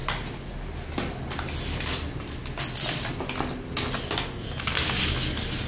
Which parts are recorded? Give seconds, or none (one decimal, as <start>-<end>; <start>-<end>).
0.0-5.7